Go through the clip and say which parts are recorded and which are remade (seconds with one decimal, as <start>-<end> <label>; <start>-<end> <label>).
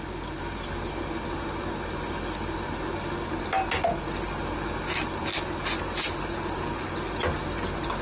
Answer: 0.0-8.0 recorded